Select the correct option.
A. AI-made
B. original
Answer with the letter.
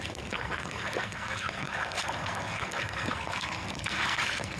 A